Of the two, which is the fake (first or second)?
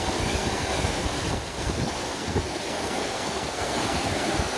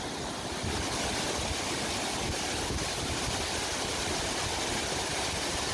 first